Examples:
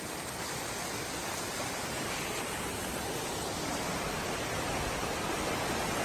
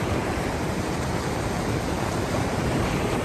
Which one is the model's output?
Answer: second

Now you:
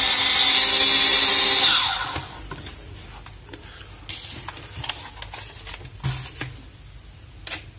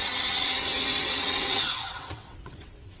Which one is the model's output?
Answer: second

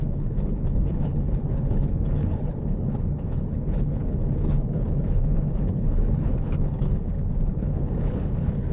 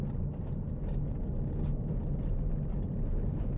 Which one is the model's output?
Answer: first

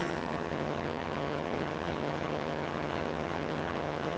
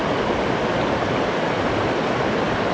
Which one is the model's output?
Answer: first